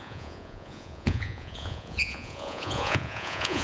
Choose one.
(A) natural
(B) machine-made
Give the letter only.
B